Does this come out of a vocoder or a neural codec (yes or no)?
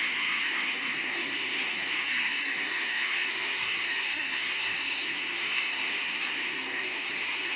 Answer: yes